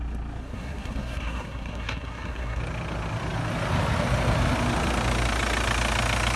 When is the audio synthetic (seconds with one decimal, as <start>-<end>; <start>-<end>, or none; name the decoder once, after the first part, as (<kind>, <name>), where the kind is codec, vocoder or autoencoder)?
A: 0.4-2.6 (codec, SNAC)